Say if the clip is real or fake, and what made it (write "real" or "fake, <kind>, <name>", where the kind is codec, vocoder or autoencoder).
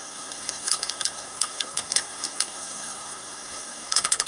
fake, codec, SNAC